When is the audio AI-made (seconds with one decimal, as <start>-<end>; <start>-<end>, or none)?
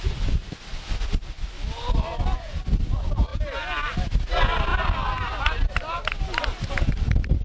none